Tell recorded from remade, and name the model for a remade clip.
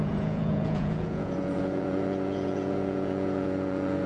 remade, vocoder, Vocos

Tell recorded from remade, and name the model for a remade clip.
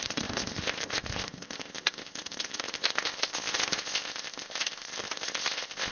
remade, codec, ZipCodec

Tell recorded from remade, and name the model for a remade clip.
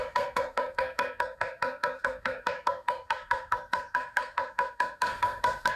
remade, codec, SNAC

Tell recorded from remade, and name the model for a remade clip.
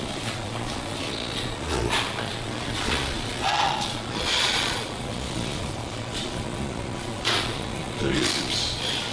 remade, vocoder, Vocos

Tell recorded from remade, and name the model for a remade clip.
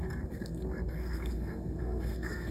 remade, codec, SNAC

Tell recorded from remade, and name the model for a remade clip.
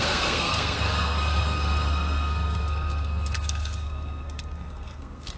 remade, codec, SNAC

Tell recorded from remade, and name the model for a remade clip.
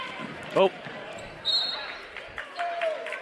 remade, vocoder, BigVGAN v2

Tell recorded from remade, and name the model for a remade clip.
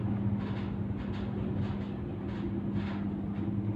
recorded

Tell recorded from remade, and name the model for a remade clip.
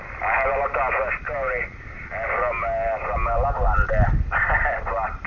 recorded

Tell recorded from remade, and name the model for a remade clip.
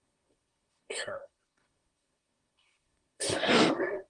remade, codec, SNAC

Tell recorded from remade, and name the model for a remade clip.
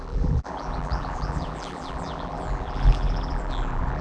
remade, vocoder, BigVGAN v2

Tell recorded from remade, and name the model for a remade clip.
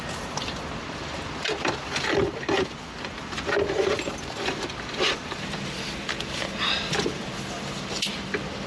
remade, vocoder, BigVGAN v2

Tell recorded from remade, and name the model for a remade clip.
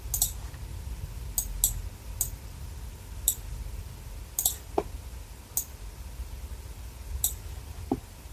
recorded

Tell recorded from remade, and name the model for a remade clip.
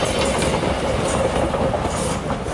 recorded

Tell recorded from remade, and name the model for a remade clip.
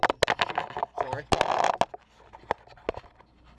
recorded